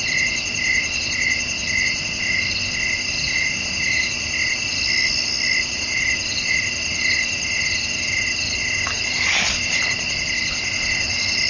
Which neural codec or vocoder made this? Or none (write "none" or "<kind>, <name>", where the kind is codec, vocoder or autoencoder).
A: none